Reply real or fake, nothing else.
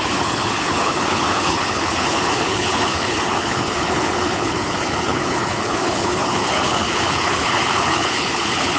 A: fake